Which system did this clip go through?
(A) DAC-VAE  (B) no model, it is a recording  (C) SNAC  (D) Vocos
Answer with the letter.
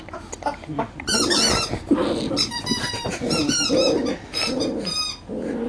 B